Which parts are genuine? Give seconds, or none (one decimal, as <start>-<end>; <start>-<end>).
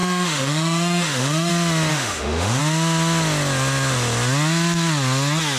1.5-1.9; 2.6-5.6